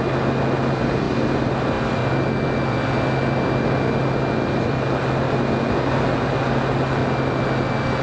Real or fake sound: real